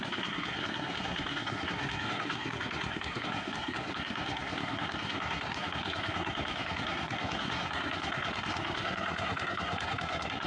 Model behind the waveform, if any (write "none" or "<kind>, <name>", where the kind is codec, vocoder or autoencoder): codec, SNAC